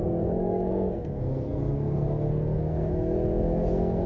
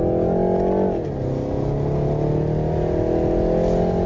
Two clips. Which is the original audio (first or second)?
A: second